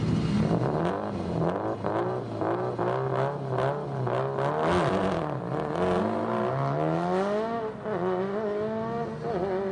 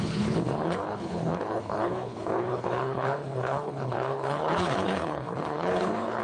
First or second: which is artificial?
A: second